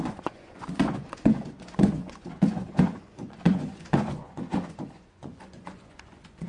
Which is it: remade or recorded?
remade